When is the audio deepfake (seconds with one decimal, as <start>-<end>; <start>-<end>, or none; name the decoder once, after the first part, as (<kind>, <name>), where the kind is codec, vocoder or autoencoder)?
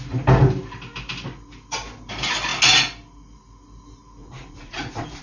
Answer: 4.2-5.2 (vocoder, Vocos)